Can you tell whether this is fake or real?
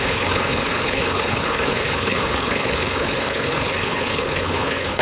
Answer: fake